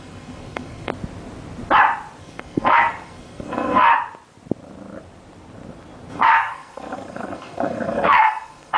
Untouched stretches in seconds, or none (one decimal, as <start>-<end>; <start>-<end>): 0.9-2.2; 3.9-6.1